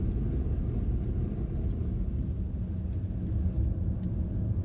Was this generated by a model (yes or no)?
no